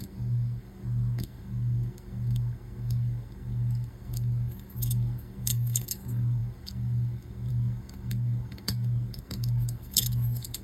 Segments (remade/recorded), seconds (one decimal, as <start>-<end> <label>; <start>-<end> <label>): 0.0-10.6 remade